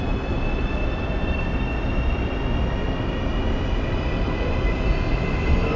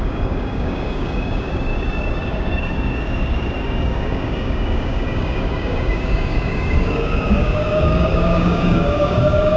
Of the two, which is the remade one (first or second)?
second